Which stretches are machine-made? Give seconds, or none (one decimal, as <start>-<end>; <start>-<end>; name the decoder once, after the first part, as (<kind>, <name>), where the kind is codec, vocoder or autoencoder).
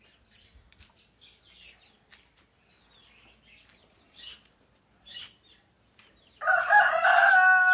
3.8-7.3 (vocoder, BigVGAN v2)